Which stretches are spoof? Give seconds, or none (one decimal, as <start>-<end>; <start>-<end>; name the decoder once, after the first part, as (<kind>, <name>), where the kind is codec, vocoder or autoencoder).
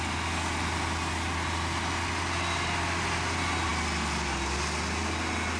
none